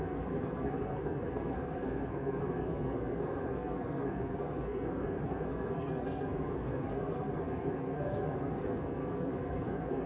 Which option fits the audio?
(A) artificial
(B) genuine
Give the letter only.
A